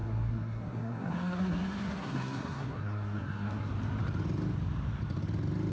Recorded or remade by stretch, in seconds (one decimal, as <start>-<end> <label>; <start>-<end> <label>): 0.0-3.7 remade; 3.7-5.7 recorded